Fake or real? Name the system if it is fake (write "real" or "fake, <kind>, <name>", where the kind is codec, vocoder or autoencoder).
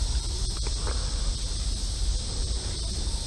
real